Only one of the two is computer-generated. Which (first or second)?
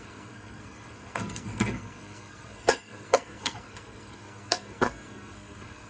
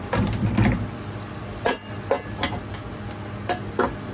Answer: first